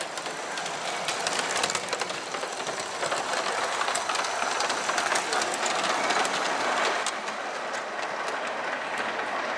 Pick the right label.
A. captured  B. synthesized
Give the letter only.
A